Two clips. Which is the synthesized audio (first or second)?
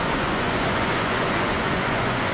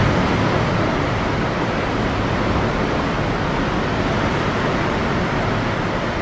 first